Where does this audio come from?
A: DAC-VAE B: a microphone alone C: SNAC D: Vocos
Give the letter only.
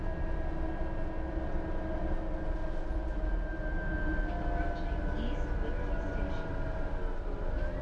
B